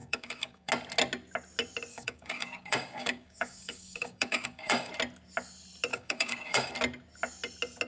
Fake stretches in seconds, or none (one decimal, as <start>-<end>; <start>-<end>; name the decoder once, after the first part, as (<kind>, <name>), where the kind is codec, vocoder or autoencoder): 0.0-0.7 (codec, DAC); 1.9-4.9; 5.9-6.7